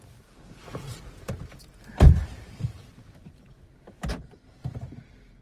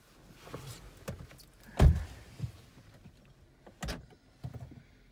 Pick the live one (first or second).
second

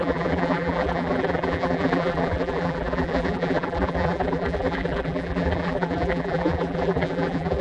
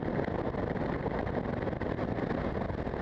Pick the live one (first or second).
second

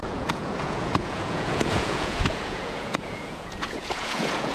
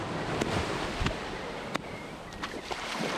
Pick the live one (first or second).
second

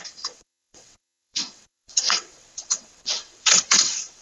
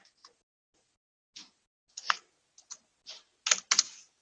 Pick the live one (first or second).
second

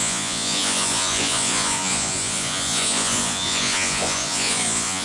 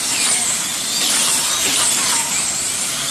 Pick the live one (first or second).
second